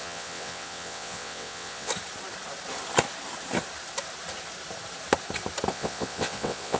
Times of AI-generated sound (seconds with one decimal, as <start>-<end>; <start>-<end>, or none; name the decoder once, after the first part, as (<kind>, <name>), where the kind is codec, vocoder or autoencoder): 0.0-1.9 (vocoder, WaveNeXt); 5.7-6.8